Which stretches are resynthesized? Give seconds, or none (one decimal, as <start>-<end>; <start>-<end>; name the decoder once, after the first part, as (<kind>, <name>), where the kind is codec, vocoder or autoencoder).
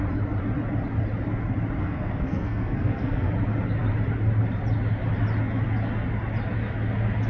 1.8-3.3 (codec, SNAC)